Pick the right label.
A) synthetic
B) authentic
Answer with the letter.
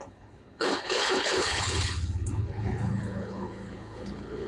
A